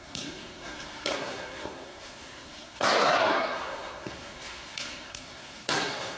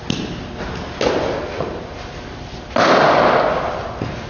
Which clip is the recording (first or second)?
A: second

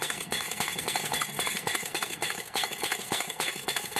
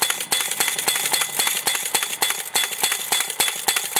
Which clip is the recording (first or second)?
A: second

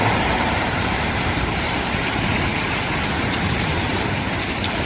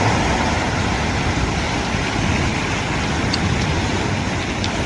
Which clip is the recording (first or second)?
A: second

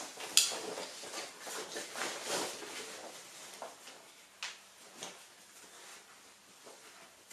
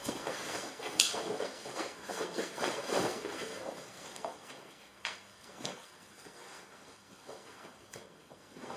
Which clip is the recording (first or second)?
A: first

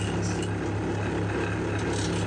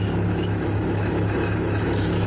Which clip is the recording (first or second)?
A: first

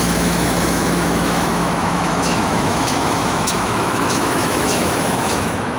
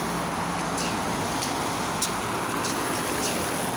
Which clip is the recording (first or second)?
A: second